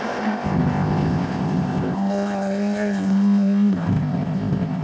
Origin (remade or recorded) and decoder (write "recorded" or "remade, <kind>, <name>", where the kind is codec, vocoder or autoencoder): remade, codec, ZipCodec